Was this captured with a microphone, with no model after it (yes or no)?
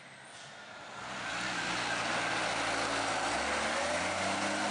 yes